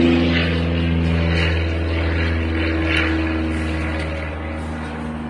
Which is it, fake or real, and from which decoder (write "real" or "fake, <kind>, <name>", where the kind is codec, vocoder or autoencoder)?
real